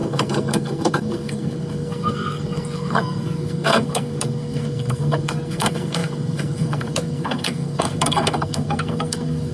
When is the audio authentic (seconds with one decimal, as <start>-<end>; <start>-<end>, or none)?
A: none